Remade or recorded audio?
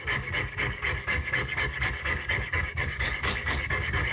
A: remade